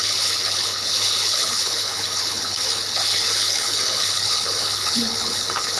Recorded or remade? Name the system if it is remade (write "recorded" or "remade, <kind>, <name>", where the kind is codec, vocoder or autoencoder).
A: remade, codec, HILCodec